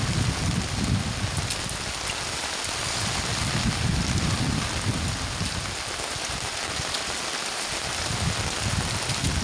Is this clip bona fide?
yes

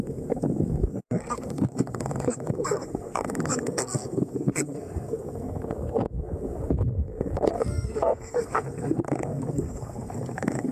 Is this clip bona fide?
no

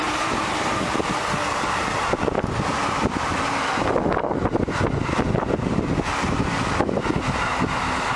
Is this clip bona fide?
yes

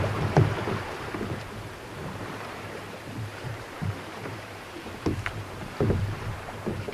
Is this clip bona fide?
no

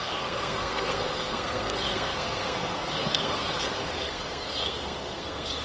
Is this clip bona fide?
no